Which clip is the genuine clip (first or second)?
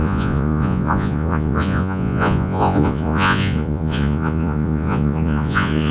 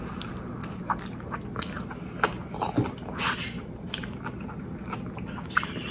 second